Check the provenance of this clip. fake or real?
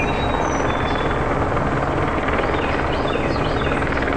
real